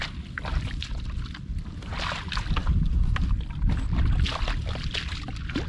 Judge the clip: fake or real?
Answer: real